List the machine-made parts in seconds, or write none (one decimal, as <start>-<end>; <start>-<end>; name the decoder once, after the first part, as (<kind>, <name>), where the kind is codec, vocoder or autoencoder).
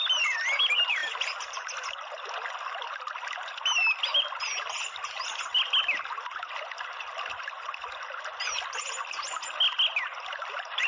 none